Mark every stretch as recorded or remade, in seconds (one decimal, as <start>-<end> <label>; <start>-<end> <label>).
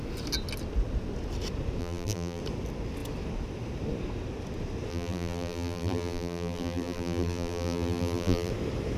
0.0-1.8 recorded; 1.8-2.4 remade; 2.4-4.9 recorded; 4.9-8.5 remade; 8.5-9.0 recorded